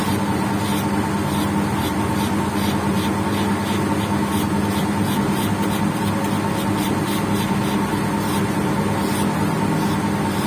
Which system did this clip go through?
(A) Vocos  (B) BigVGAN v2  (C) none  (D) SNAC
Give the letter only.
C